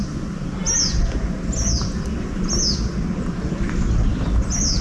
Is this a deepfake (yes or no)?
no